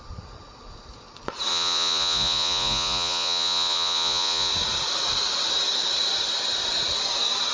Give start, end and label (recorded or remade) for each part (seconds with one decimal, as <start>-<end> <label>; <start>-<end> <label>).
0.0-1.5 recorded; 1.5-4.5 remade; 4.5-7.5 recorded